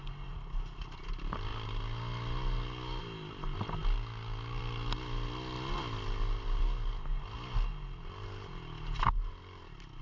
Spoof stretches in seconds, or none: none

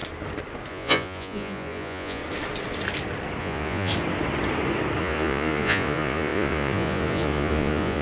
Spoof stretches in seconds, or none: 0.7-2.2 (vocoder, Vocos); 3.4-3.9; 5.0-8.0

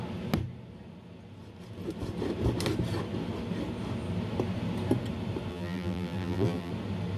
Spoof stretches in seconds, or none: 5.5-6.7 (vocoder, BigVGAN v2)

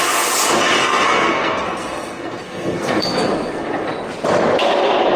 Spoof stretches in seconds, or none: 0.8-3.9 (codec, SNAC)

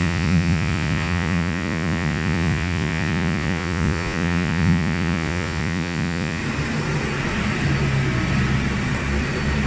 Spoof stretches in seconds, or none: 0.0-6.4 (vocoder, Vocos)

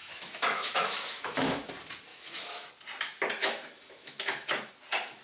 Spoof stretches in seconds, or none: 0.0-1.7 (autoencoder, DAC-VAE); 2.1-2.7; 3.4-4.7